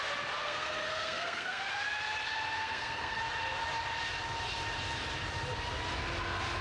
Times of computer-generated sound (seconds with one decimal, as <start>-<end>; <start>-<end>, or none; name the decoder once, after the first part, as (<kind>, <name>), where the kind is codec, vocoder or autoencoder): 0.4-1.7 (codec, SNAC); 2.6-3.2